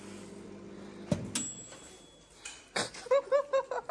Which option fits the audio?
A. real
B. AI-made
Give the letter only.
A